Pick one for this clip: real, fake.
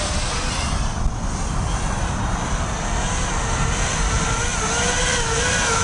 real